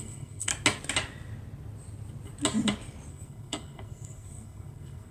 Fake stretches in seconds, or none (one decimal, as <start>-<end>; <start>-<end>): 0.0-0.5; 3.1-5.1